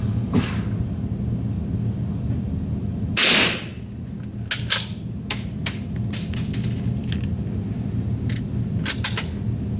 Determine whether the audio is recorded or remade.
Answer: recorded